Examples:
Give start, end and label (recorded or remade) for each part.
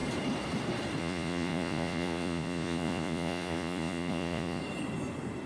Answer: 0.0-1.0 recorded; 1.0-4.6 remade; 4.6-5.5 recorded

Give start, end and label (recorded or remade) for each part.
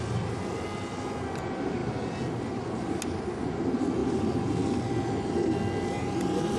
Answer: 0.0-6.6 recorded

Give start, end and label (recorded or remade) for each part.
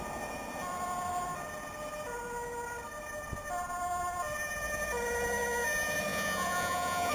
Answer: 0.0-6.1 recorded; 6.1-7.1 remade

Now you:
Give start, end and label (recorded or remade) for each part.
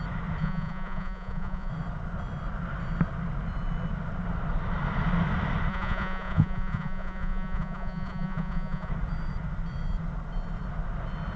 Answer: 0.0-0.4 recorded; 0.4-1.7 remade; 1.7-5.7 recorded; 5.7-8.9 remade; 8.9-11.4 recorded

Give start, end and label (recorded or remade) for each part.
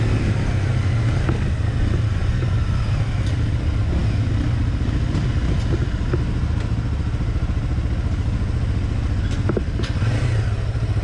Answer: 0.0-2.2 recorded; 2.2-2.8 remade; 2.8-11.0 recorded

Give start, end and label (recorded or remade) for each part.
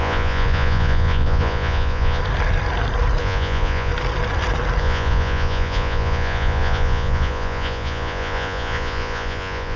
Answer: 0.0-2.2 remade; 2.2-3.2 recorded; 3.2-3.9 remade; 3.9-4.8 recorded; 4.8-9.8 remade